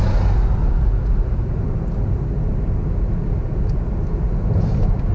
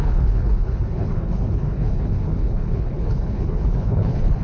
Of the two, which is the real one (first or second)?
first